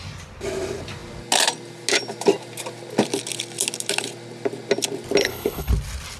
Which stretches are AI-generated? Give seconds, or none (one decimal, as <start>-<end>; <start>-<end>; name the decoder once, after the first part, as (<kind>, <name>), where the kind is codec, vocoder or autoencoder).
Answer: 5.2-5.7 (codec, HILCodec)